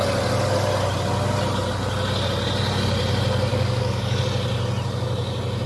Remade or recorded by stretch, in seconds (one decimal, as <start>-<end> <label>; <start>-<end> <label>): 0.0-3.5 recorded; 3.5-4.2 remade; 4.2-5.7 recorded